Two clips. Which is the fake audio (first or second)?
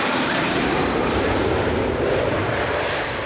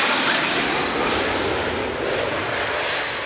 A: first